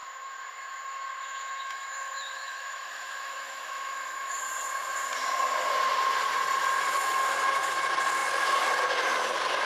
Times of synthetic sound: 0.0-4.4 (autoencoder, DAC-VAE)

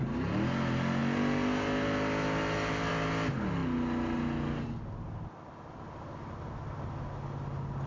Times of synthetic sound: none

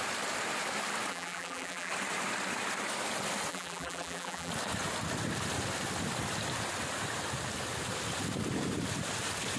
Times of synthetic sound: 1.1-1.9 (vocoder, BigVGAN v2); 3.5-4.5

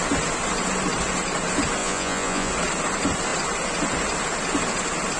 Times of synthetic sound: 1.8-2.5 (vocoder, Vocos)

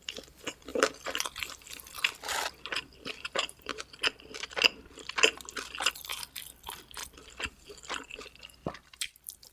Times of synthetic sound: 0.0-3.7 (vocoder, BigVGAN v2); 5.9-7.0; 9.1-9.5